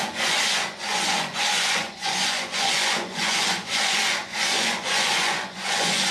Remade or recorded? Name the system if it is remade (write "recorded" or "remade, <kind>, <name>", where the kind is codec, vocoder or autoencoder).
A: remade, vocoder, Vocos